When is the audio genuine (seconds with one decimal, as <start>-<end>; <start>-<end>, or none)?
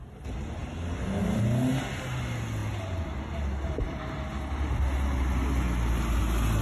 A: 0.0-6.6